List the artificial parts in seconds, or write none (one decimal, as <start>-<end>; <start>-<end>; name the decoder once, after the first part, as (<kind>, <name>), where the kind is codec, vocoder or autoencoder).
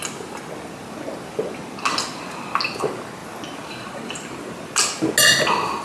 none